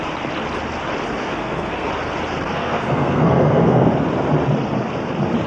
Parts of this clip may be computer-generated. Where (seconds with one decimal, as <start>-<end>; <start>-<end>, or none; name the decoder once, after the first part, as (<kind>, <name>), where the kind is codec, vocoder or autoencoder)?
1.2-1.9 (codec, SNAC); 2.5-3.9